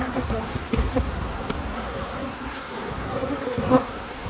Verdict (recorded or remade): remade